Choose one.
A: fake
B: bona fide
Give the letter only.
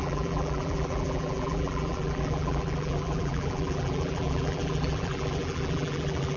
A